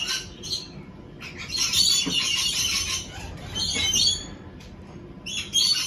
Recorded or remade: recorded